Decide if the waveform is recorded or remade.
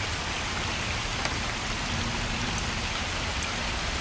recorded